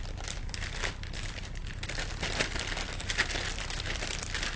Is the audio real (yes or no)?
yes